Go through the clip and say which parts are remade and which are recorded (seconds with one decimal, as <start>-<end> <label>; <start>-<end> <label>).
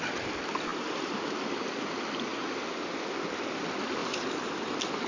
0.0-5.1 recorded